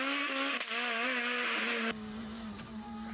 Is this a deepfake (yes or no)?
no